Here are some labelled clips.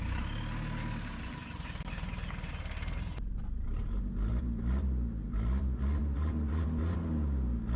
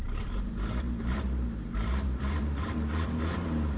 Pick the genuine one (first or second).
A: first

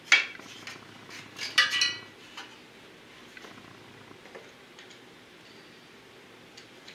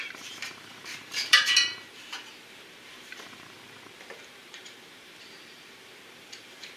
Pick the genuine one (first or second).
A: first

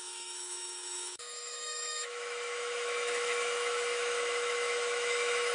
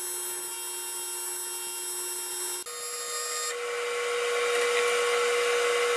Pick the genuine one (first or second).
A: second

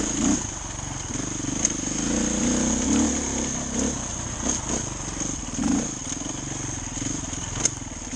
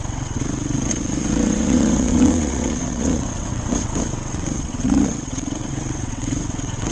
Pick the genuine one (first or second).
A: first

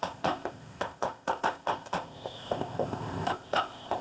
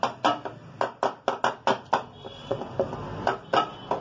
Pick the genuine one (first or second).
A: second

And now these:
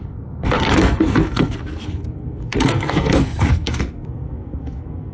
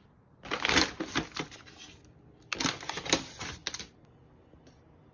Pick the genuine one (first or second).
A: second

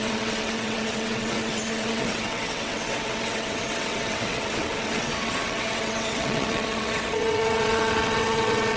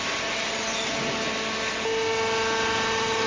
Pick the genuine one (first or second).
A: second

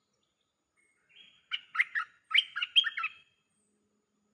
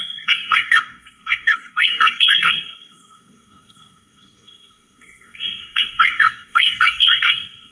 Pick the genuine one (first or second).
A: first